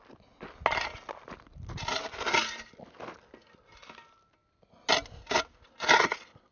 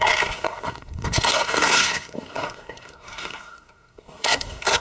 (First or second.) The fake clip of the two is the second